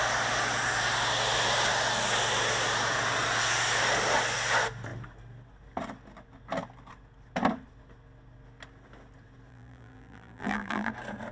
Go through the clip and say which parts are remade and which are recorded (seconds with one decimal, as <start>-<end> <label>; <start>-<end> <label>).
0.0-9.5 recorded; 9.5-10.9 remade; 10.9-11.3 recorded